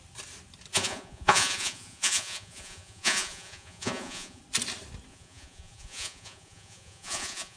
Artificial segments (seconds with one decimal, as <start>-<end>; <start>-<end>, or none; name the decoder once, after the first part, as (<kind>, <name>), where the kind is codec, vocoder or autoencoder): 0.7-4.4 (vocoder, Vocos); 5.1-7.6